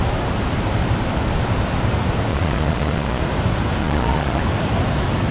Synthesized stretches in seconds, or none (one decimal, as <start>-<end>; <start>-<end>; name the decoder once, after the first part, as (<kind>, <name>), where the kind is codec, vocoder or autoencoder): 2.3-3.2 (vocoder, Vocos); 3.8-4.4